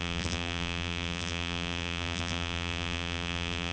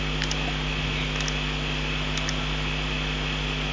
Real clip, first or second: second